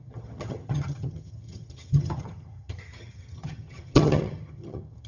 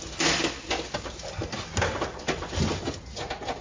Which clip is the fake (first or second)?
first